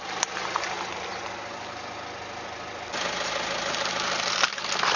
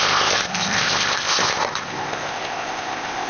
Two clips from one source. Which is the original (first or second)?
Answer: first